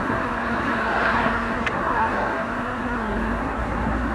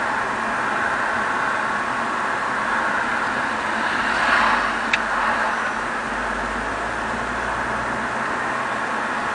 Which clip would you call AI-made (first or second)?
first